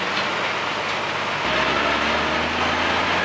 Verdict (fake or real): real